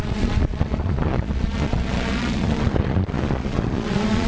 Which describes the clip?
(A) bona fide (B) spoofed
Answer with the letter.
B